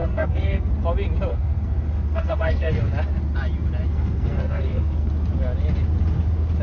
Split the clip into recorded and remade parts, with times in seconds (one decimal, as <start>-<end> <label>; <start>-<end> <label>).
0.0-0.7 remade; 0.7-1.3 recorded; 1.3-2.7 remade; 2.7-3.9 recorded; 3.9-5.1 remade; 5.1-6.6 recorded